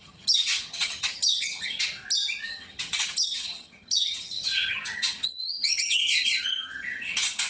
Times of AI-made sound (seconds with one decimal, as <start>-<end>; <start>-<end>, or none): 0.0-2.0; 2.5-7.5